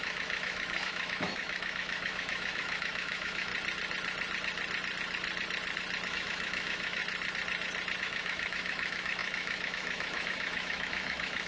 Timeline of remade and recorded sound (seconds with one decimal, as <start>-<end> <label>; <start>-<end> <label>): 0.0-3.5 remade; 3.5-6.1 recorded; 6.1-7.0 remade; 7.0-8.0 recorded; 8.0-11.5 remade